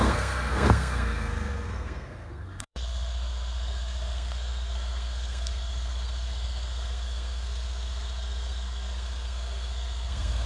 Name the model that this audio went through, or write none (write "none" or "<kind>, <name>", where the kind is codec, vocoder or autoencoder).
codec, SNAC